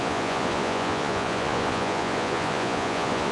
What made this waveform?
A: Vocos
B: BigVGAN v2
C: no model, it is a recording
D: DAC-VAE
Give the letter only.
A